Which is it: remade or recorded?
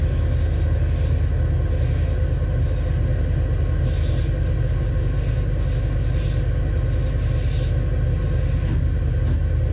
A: recorded